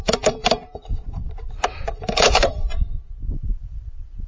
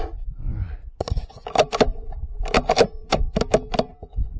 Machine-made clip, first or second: first